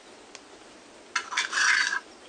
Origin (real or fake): real